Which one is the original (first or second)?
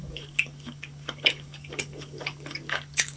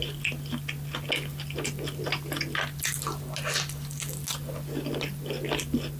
second